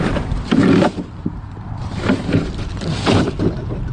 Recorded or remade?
remade